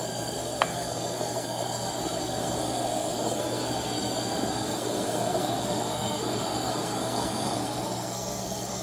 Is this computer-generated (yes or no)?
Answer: yes